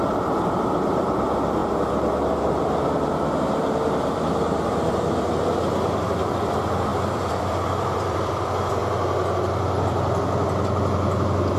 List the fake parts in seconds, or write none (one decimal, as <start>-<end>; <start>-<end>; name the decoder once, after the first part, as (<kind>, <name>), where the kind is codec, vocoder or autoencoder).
0.0-1.6 (vocoder, BigVGAN v2); 2.2-8.8